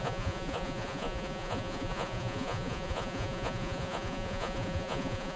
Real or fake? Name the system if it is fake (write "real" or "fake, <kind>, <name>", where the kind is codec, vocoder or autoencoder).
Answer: fake, vocoder, Vocos